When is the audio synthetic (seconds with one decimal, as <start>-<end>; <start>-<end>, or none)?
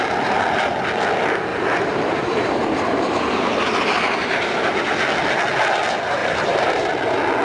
1.5-4.3; 6.2-6.9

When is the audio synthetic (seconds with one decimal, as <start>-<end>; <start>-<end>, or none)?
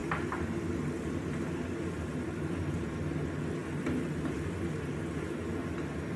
none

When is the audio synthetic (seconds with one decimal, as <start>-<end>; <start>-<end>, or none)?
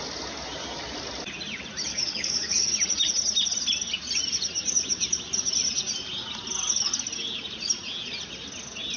1.9-2.7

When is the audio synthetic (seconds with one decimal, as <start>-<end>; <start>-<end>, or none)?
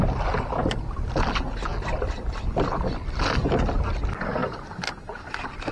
none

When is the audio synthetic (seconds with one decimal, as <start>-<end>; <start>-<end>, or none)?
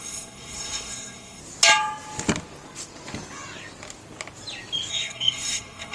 0.0-1.4; 4.9-5.9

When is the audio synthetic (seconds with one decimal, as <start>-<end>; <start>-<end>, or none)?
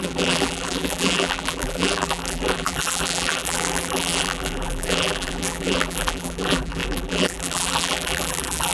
0.0-8.7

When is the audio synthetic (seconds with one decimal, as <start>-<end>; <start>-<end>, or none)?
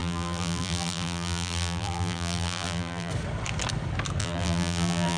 0.0-3.1; 4.2-5.2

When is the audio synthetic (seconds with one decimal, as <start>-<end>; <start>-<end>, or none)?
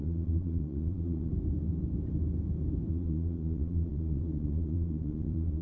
0.0-1.3; 2.9-5.6